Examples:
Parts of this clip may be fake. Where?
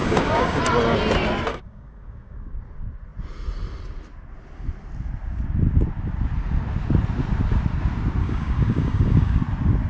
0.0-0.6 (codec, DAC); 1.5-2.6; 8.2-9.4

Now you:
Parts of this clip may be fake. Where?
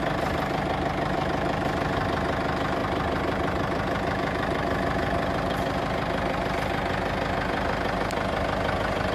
2.8-6.5 (vocoder, BigVGAN v2)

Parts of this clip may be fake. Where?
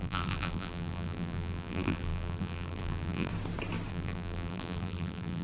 0.0-3.3 (vocoder, BigVGAN v2); 3.9-5.4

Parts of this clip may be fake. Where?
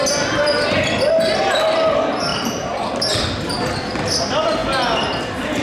2.3-2.9 (vocoder, BigVGAN v2)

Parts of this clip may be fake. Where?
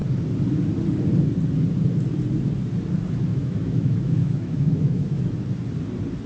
3.3-5.2 (autoencoder, DAC-VAE)